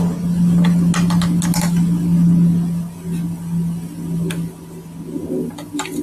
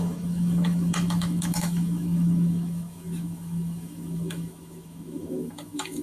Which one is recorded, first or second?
first